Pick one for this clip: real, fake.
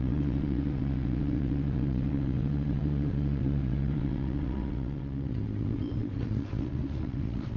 fake